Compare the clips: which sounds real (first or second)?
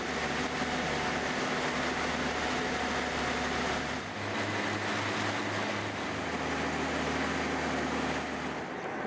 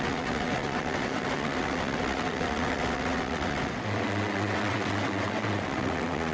first